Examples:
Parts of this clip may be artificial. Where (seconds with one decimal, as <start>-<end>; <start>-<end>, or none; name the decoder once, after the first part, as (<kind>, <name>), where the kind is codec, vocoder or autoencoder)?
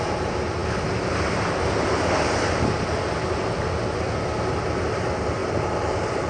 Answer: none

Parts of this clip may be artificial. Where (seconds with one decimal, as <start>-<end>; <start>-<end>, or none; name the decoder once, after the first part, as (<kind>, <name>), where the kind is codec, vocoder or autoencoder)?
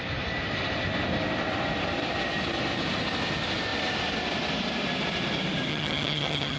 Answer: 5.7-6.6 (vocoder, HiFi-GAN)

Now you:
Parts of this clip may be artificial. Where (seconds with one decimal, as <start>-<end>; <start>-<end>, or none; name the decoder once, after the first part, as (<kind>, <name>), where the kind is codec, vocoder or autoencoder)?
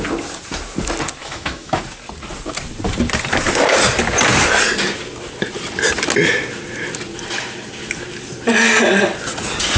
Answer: 1.2-1.8 (autoencoder, DAC-VAE)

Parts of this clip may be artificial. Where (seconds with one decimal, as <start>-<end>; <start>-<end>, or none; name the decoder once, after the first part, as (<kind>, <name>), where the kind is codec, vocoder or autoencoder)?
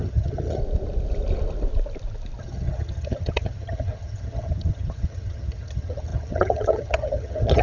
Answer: 0.0-0.6 (vocoder, HiFi-GAN); 2.4-7.6